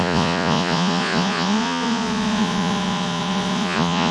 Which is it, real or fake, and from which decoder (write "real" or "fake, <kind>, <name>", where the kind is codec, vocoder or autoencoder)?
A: fake, vocoder, Vocos